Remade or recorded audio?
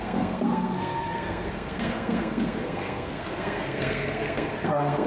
remade